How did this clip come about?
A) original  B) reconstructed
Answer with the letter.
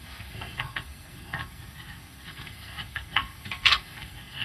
B